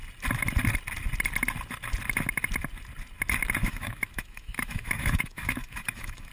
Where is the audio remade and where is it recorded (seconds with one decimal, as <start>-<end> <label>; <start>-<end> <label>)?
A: 0.0-3.6 recorded; 3.6-6.3 remade